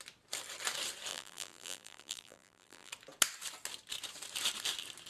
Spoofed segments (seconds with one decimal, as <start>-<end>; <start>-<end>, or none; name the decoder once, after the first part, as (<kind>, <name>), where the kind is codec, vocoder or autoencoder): 1.1-2.9 (vocoder, BigVGAN v2)

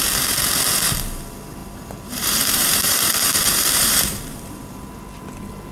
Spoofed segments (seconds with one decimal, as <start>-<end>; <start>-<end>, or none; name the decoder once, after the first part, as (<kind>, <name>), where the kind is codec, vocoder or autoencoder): 1.6-5.0 (vocoder, BigVGAN v2)

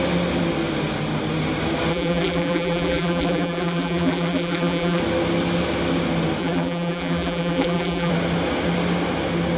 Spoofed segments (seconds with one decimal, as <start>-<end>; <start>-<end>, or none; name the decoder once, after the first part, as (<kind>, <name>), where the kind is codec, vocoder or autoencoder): 1.9-5.0 (vocoder, BigVGAN v2); 6.4-8.1

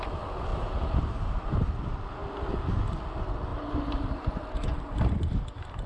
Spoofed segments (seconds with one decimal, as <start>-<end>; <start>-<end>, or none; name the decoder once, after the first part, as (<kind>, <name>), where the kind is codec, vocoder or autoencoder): 0.5-1.7 (vocoder, BigVGAN v2); 3.5-5.0

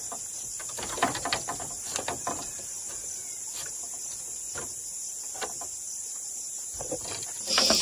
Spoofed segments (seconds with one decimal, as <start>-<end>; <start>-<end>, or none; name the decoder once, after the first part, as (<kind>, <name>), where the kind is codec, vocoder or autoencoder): 6.7-7.3 (vocoder, BigVGAN v2)